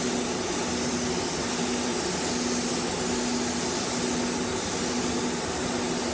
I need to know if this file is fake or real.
real